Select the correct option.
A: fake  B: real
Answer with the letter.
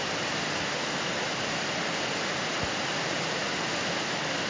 B